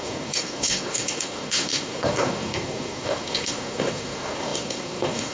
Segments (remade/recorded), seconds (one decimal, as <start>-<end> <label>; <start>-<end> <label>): 0.0-5.3 remade